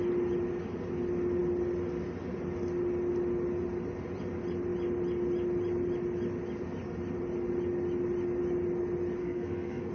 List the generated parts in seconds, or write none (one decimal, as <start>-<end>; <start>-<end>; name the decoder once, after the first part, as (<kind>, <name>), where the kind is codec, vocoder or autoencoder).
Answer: 9.2-9.9 (codec, SNAC)